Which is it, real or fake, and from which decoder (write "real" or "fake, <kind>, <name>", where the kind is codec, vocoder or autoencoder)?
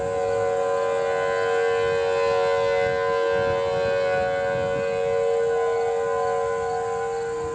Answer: real